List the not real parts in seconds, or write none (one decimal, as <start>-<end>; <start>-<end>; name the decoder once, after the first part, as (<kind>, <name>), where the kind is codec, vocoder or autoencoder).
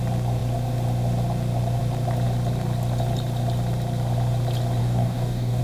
4.8-5.6 (codec, DAC)